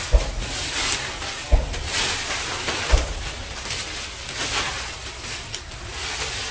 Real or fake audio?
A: real